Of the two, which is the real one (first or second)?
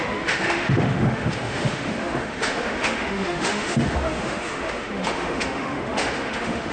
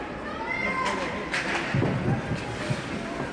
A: second